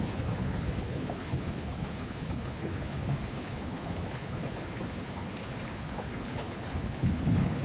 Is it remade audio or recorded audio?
remade